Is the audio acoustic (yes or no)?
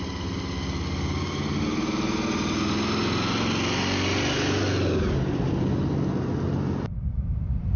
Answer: yes